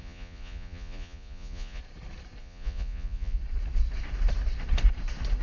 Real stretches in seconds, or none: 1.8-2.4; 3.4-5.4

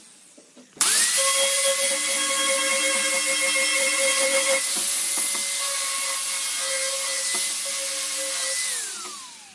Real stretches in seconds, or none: 0.0-3.7; 5.1-9.5

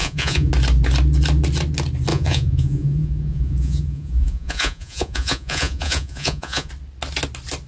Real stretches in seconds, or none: 0.5-2.1; 6.7-7.7

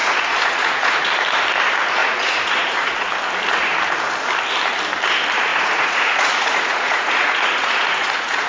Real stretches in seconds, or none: 1.1-2.0; 3.1-5.5